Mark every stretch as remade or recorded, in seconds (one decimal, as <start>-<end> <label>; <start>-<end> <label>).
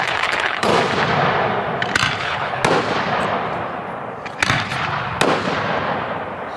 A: 0.0-0.7 remade; 0.7-2.2 recorded; 2.2-2.6 remade; 2.6-6.6 recorded